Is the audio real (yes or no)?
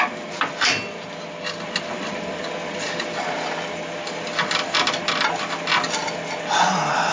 yes